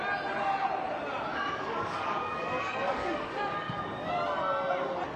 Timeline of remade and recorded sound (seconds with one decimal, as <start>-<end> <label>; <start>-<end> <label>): 0.0-1.3 recorded; 1.3-4.1 remade; 4.1-5.2 recorded